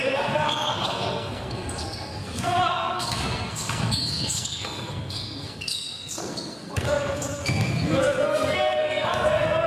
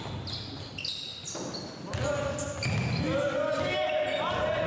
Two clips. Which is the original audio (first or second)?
second